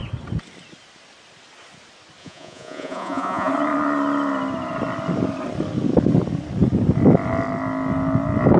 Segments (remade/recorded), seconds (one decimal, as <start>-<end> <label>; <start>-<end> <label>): 0.0-2.2 recorded; 2.2-3.5 remade; 3.5-8.6 recorded